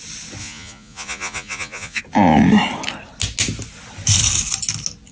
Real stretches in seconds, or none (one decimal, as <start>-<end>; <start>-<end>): 0.0-0.4; 2.0-5.1